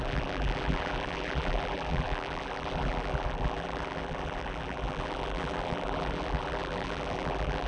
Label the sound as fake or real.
fake